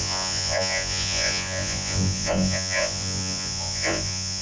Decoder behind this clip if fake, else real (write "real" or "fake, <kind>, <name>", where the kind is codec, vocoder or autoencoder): fake, vocoder, Vocos